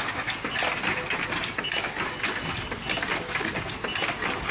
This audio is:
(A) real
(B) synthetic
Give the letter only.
A